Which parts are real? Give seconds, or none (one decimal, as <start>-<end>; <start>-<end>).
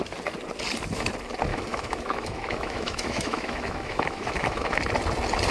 0.0-1.5; 4.8-5.5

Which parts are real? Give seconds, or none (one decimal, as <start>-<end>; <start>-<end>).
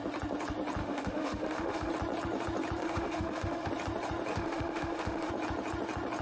0.0-0.8; 1.9-2.8; 3.7-4.3; 5.3-6.2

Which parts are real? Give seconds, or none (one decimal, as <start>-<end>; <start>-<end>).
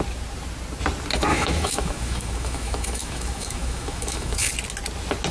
0.0-1.3; 4.5-5.3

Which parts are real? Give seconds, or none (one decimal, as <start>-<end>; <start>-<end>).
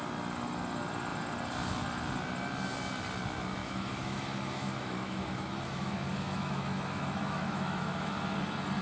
0.0-3.6; 8.1-8.8